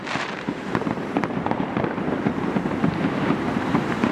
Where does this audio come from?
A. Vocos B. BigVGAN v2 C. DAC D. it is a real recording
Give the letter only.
B